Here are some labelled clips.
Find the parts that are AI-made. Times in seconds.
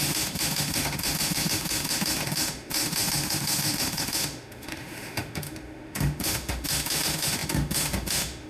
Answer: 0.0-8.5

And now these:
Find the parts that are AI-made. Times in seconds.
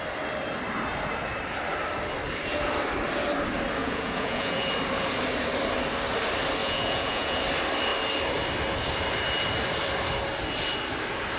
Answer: 3.8-4.7; 6.6-7.4